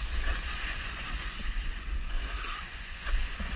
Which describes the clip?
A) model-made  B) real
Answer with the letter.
A